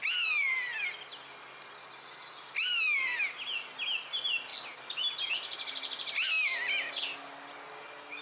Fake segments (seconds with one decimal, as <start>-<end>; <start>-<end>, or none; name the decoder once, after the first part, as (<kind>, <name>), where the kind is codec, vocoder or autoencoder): none

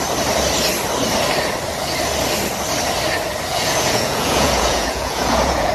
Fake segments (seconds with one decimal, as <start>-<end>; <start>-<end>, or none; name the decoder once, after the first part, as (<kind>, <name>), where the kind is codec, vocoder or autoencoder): 3.5-5.7 (vocoder, Vocos)

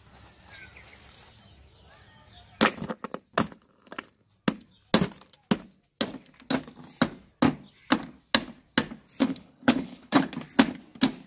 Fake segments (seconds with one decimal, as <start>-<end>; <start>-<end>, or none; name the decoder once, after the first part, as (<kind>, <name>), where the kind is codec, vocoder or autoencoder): 9.2-10.3 (codec, HILCodec)